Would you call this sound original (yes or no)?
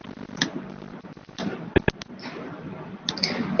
yes